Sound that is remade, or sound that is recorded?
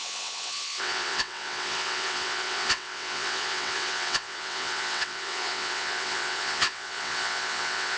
remade